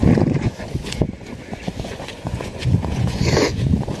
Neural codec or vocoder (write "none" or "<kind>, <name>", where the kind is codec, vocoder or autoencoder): vocoder, Vocos